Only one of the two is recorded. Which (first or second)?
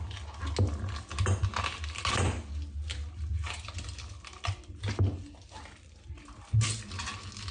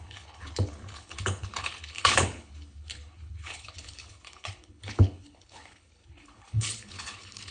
first